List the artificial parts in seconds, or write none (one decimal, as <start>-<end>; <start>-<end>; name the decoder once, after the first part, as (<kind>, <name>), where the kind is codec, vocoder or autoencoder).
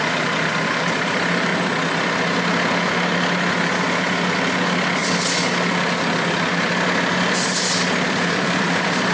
0.0-1.5 (vocoder, BigVGAN v2); 4.5-5.0; 7.8-9.1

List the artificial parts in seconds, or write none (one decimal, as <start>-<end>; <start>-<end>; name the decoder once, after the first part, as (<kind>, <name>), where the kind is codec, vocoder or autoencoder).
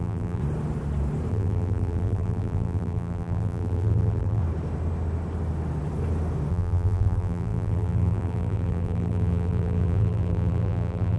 0.0-0.4 (vocoder, BigVGAN v2); 1.3-4.4; 6.5-11.2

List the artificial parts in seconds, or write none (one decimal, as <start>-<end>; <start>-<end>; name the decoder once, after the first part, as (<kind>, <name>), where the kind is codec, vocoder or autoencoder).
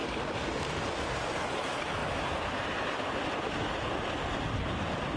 none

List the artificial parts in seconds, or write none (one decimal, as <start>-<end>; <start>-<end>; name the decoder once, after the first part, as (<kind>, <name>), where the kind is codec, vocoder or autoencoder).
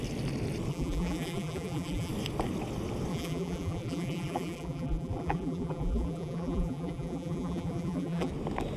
0.7-2.1 (vocoder, BigVGAN v2); 3.1-8.3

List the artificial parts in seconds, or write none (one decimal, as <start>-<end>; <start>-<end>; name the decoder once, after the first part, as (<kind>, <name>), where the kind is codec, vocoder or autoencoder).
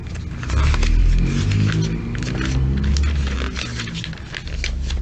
none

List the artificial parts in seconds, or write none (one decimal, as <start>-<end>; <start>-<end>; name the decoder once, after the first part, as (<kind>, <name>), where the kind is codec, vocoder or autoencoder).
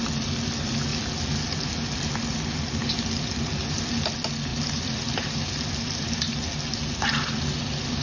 4.5-6.3 (vocoder, BigVGAN v2)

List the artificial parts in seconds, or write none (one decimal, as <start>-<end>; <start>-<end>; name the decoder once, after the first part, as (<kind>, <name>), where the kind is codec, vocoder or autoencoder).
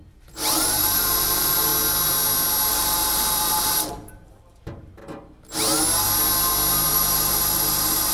0.0-1.7 (vocoder, BigVGAN v2); 2.7-5.0; 6.9-8.1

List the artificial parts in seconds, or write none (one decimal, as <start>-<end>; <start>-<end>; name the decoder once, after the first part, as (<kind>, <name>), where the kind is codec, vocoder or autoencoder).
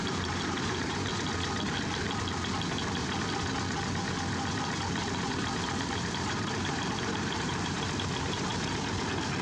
0.0-1.1 (vocoder, BigVGAN v2); 5.3-8.5